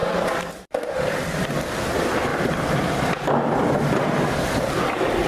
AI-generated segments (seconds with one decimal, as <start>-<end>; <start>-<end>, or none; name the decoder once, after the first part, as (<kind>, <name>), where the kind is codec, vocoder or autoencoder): 0.0-1.5 (vocoder, BigVGAN v2)